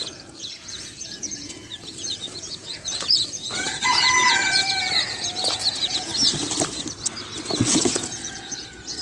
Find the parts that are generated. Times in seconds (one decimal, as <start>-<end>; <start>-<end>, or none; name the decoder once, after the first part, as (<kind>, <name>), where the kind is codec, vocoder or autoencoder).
0.0-6.1 (vocoder, Vocos); 7.7-9.0

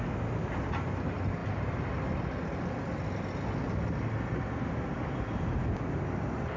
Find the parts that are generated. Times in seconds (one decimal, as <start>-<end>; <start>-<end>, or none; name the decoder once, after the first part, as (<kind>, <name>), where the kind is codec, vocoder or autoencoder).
none

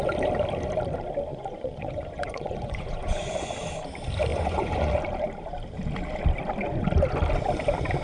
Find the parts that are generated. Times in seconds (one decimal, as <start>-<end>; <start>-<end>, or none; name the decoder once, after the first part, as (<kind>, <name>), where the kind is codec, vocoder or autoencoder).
1.3-3.5 (vocoder, Vocos); 4.3-4.9

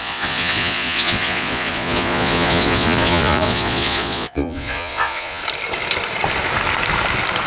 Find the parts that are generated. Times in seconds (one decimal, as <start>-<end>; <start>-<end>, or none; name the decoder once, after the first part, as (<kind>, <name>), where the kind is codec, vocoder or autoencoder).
0.0-5.4 (vocoder, Vocos)

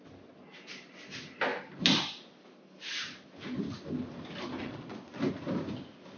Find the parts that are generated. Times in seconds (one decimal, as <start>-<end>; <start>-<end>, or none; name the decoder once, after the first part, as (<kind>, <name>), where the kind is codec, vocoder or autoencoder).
4.6-5.2 (vocoder, Vocos)

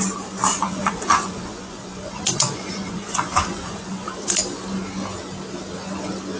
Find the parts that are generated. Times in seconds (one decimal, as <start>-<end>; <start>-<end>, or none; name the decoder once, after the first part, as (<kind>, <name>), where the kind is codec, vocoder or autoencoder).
0.5-4.3 (vocoder, Vocos)